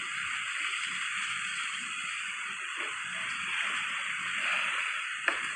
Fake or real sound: real